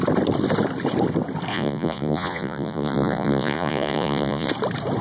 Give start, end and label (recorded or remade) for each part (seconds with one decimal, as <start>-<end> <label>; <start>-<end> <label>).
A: 0.0-1.5 recorded; 1.5-4.5 remade; 4.5-5.0 recorded